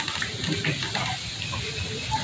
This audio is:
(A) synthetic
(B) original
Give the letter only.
B